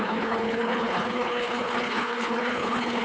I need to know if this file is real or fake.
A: fake